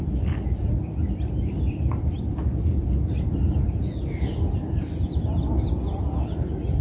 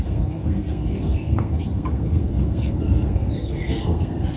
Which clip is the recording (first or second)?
first